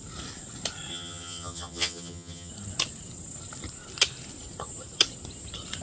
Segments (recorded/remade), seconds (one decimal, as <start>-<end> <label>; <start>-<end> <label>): 0.0-0.9 recorded; 0.9-2.5 remade; 2.5-5.8 recorded